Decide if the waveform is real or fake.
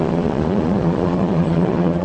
fake